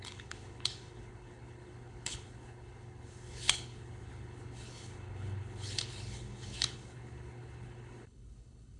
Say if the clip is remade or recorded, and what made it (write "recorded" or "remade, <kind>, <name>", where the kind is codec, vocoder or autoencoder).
remade, codec, HILCodec